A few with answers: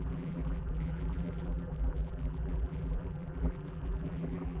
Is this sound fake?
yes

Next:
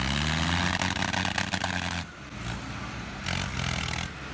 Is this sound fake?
no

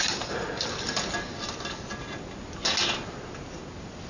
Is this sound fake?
no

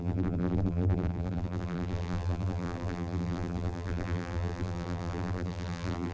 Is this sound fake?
yes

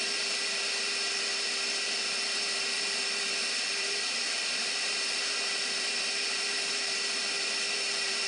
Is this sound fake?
yes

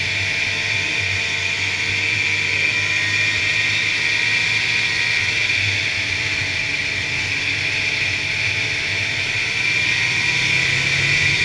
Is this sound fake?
no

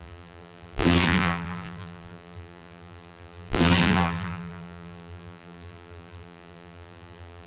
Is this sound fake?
yes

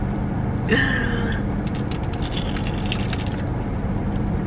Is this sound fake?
no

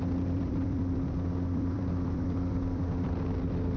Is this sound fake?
yes